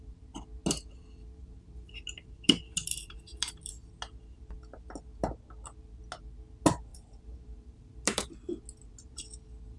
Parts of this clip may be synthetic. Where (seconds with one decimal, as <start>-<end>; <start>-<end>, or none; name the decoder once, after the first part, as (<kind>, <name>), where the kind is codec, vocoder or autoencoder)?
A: 1.4-3.7 (vocoder, BigVGAN v2); 6.9-8.3